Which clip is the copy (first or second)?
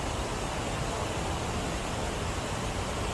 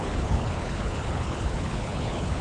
second